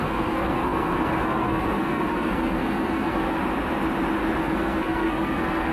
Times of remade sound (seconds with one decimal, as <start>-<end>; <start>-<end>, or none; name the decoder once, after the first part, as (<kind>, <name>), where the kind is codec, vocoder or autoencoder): 0.0-3.4 (codec, SNAC); 4.4-5.7